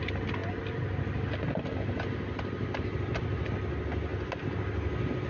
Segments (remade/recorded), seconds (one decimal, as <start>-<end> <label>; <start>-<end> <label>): 0.0-5.3 recorded